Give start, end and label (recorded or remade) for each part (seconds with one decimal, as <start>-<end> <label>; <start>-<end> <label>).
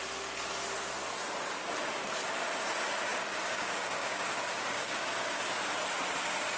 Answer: 0.0-3.1 recorded; 3.1-5.4 remade; 5.4-6.6 recorded